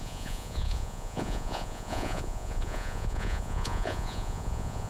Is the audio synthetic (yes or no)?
yes